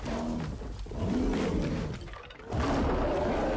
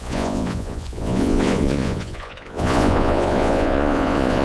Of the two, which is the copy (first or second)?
second